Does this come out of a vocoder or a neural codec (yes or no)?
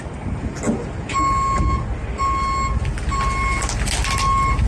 no